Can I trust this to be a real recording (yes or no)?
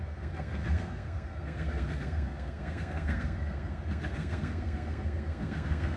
no